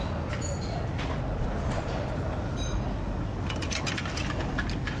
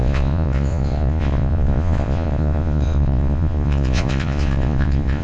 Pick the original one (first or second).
first